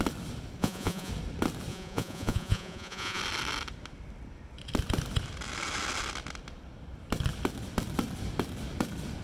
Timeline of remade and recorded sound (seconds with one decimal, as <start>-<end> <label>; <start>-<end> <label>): 0.0-0.6 recorded; 0.6-1.1 remade; 1.1-1.7 recorded; 1.7-3.2 remade; 3.2-9.2 recorded